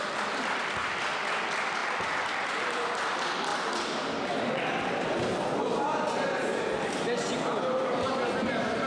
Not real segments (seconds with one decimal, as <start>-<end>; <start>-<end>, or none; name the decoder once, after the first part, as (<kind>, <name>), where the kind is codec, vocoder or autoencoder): 0.0-1.8 (vocoder, BigVGAN v2); 2.3-8.9